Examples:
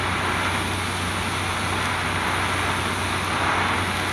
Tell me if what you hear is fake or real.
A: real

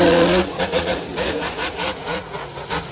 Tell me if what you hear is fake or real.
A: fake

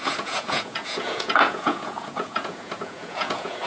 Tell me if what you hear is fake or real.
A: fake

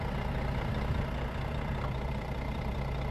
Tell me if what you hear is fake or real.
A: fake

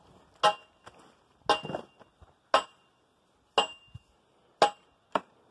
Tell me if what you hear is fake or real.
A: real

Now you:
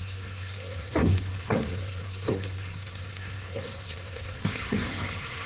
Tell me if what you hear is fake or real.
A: fake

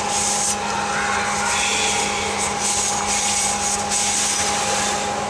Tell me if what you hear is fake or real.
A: real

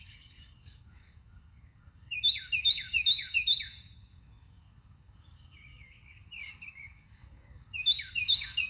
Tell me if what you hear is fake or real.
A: fake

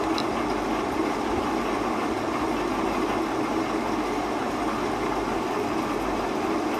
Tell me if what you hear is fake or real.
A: real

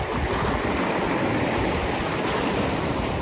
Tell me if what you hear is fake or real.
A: real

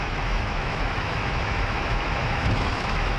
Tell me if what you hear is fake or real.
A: fake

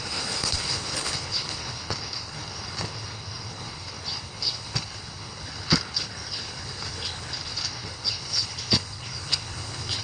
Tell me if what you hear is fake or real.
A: fake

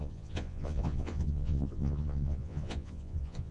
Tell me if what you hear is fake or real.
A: fake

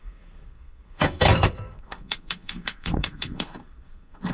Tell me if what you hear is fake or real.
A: fake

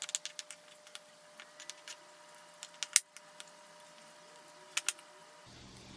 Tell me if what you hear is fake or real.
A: real